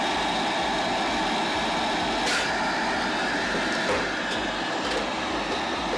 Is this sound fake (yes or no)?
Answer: no